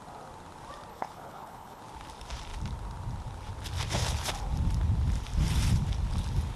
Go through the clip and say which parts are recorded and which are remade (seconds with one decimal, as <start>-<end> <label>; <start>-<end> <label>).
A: 0.0-0.9 recorded; 0.9-1.8 remade; 1.8-6.6 recorded

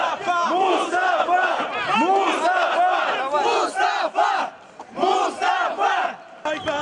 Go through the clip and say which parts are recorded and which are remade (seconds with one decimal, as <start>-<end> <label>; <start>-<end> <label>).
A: 0.0-6.8 recorded

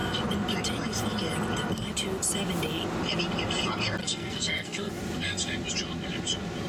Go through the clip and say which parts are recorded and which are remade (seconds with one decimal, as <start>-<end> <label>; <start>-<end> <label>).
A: 0.0-4.0 recorded; 4.0-4.9 remade; 4.9-6.7 recorded

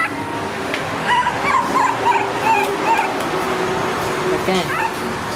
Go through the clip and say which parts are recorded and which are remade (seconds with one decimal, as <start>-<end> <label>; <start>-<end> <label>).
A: 0.0-0.5 recorded; 0.5-1.4 remade; 1.4-5.3 recorded

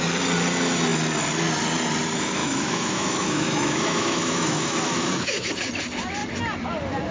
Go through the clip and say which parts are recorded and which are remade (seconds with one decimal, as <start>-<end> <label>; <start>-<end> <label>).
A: 0.0-2.4 recorded; 2.4-5.5 remade; 5.5-7.1 recorded